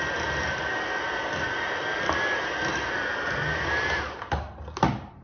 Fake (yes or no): no